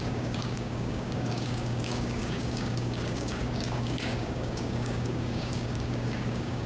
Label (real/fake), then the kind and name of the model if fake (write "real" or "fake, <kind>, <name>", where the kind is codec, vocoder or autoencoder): fake, codec, DAC